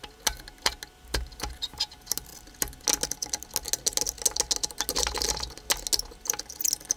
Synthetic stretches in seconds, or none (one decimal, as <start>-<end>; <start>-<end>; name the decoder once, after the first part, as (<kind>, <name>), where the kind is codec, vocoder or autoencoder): none